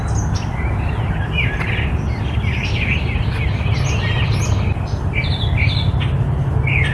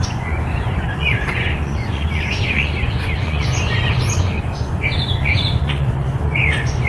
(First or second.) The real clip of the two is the first